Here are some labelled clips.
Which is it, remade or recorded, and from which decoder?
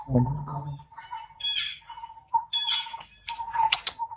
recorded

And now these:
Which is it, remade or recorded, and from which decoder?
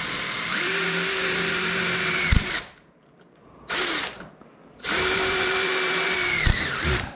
remade, vocoder, BigVGAN v2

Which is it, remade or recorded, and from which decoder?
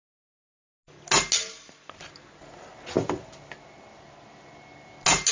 recorded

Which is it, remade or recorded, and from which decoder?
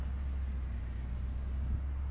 recorded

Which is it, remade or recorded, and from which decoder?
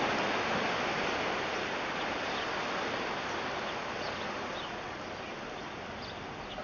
recorded